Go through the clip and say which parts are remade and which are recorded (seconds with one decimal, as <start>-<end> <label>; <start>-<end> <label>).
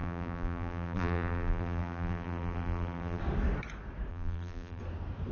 0.0-3.2 remade; 3.2-4.1 recorded; 4.1-4.8 remade; 4.8-5.3 recorded